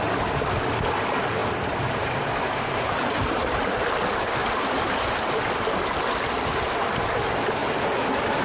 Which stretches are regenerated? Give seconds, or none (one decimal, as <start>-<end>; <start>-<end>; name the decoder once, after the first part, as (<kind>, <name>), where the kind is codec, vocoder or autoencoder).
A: 1.4-3.9 (vocoder, BigVGAN v2)